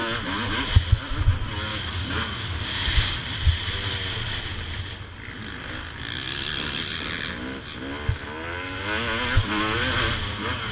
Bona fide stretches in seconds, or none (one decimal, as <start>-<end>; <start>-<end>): 0.0-1.7; 3.2-10.7